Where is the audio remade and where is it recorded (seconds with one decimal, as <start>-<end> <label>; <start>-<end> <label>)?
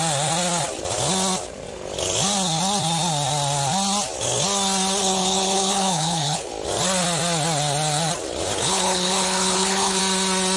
0.0-5.0 recorded; 5.0-6.5 remade; 6.5-8.6 recorded; 8.6-10.0 remade; 10.0-10.6 recorded